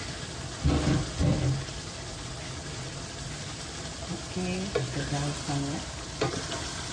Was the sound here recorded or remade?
recorded